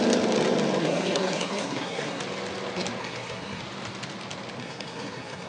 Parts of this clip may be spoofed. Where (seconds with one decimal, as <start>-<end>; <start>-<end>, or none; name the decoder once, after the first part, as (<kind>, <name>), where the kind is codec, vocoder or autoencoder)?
0.8-2.2 (codec, SNAC); 3.0-3.6; 4.6-5.5